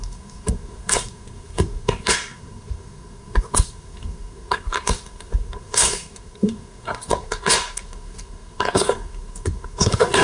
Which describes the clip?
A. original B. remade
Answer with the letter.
B